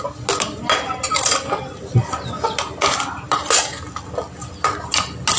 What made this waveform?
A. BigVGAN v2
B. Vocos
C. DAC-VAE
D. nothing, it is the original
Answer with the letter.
D